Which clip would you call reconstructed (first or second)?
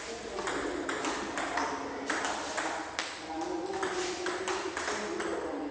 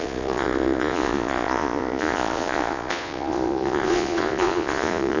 second